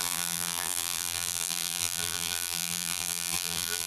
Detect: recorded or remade remade